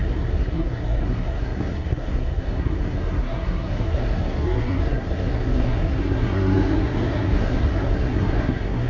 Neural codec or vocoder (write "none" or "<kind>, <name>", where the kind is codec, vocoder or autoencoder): codec, SNAC